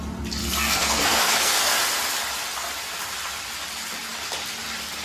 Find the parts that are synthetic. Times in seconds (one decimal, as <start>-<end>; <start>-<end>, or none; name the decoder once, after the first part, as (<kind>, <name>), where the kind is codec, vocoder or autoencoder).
0.4-1.7 (codec, SNAC)